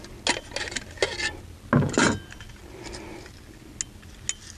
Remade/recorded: recorded